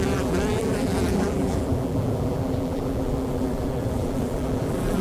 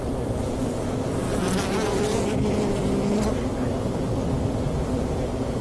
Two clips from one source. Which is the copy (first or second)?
first